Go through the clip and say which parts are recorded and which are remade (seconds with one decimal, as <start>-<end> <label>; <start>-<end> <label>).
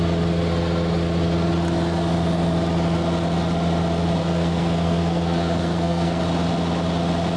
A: 0.0-4.2 recorded; 4.2-6.2 remade; 6.2-7.4 recorded